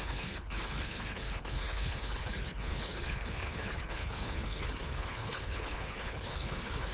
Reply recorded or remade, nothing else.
remade